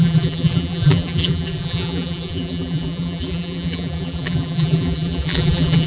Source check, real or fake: fake